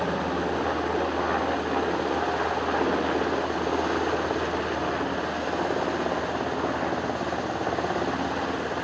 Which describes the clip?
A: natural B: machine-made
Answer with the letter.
A